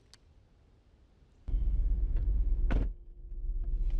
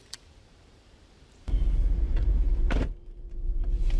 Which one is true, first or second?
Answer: first